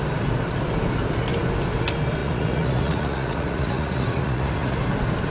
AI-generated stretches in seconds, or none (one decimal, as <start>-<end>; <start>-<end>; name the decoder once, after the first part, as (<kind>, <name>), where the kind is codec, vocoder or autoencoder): 2.2-4.8 (vocoder, Vocos)